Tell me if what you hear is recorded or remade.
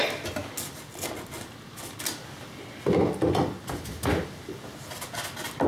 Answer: recorded